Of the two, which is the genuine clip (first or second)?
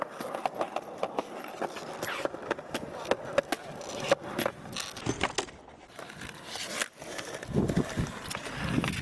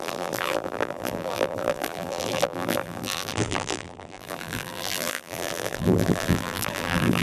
first